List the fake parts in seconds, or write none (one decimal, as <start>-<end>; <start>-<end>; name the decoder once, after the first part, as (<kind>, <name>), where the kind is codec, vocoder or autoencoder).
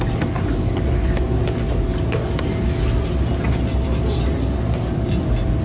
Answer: none